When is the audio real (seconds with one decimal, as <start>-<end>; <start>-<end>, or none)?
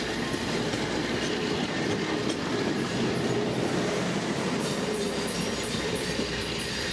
0.0-5.5; 6.3-6.9